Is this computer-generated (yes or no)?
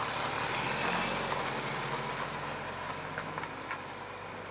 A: no